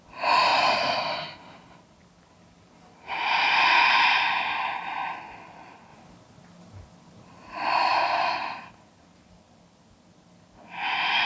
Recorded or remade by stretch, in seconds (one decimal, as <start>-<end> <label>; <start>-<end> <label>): 0.0-11.3 recorded